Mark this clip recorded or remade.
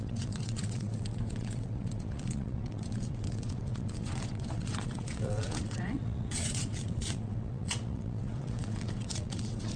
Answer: remade